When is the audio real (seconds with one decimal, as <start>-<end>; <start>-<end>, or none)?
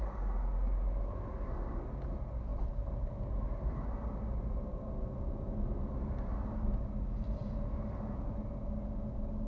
0.0-9.5